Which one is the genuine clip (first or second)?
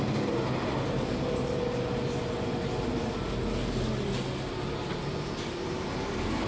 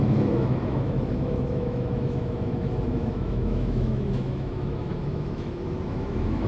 first